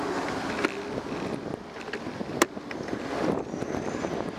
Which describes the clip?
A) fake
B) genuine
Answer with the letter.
B